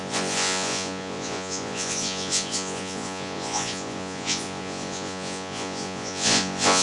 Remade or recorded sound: remade